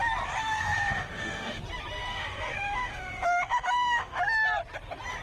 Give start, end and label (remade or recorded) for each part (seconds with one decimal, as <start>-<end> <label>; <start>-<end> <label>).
0.0-0.4 recorded; 0.4-1.6 remade; 1.6-2.1 recorded; 2.1-4.2 remade; 4.2-5.2 recorded